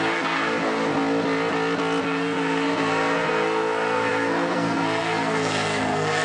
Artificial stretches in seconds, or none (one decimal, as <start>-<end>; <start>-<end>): 0.0-0.9; 2.0-6.2